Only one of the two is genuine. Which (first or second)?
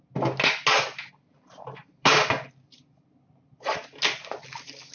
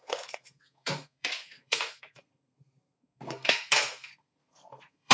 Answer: first